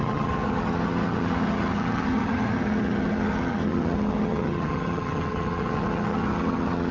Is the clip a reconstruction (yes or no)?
yes